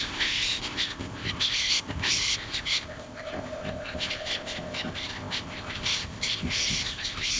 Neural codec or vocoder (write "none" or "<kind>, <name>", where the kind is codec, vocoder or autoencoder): codec, ZipCodec